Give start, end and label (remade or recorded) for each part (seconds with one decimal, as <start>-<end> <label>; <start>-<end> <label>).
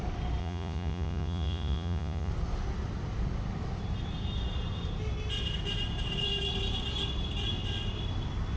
0.0-0.4 recorded; 0.4-2.3 remade; 2.3-8.6 recorded